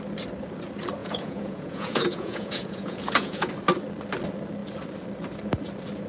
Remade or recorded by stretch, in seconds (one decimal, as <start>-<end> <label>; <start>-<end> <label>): 0.0-1.0 recorded; 1.0-3.5 remade; 3.5-6.1 recorded